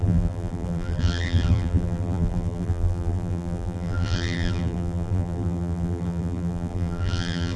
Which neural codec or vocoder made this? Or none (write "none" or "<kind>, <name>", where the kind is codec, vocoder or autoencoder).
vocoder, BigVGAN v2